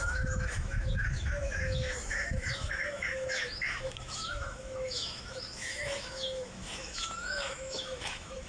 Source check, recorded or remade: remade